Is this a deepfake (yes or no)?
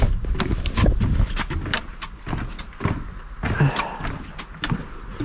no